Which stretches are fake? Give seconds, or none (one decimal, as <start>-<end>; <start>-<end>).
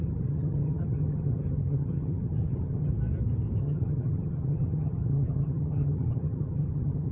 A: 0.0-2.9; 3.6-7.1